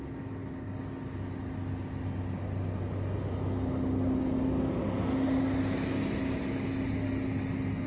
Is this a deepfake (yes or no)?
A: no